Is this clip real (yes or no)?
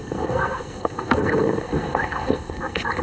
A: no